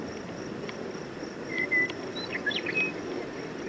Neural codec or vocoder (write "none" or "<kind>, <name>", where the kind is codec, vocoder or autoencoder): none